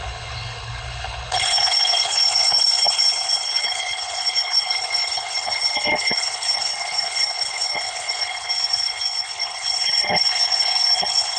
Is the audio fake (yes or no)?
yes